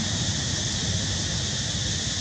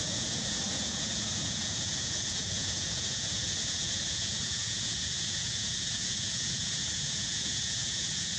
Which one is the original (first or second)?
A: first